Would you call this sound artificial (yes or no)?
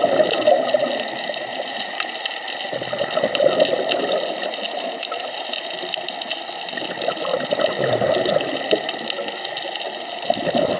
no